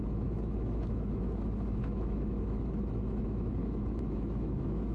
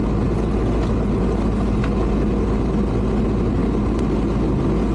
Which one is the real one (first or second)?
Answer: second